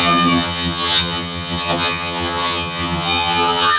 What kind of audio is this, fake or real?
fake